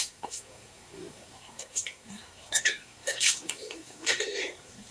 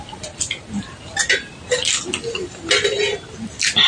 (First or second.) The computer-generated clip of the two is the first